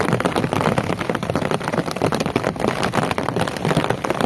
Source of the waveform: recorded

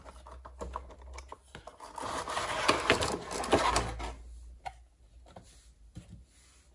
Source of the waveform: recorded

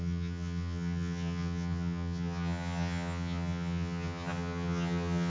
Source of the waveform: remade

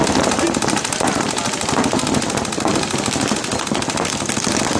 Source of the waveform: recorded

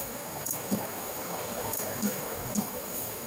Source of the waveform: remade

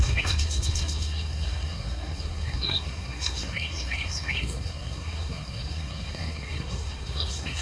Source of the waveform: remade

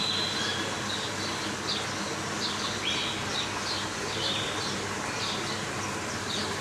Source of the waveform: recorded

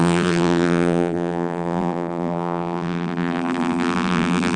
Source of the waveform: remade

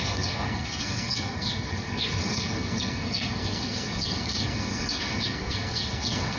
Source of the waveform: remade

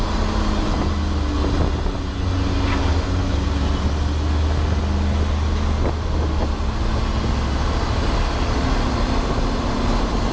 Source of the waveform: recorded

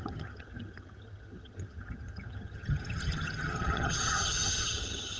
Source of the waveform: remade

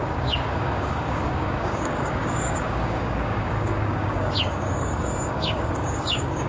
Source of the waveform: remade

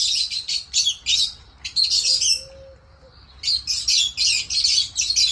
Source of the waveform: recorded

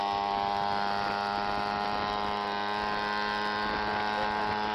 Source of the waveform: recorded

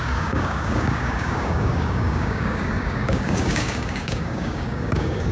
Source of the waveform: remade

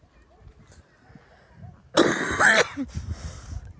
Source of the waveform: recorded